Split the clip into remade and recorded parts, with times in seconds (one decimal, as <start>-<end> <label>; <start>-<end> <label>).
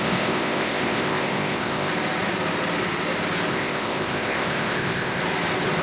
0.0-1.9 remade; 1.9-3.5 recorded; 3.5-5.2 remade; 5.2-5.8 recorded